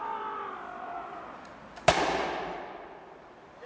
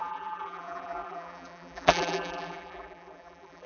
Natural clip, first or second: first